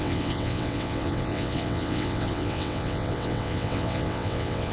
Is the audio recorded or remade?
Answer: remade